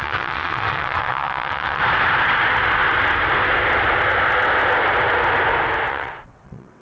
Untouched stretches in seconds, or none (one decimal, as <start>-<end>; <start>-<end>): 1.8-5.9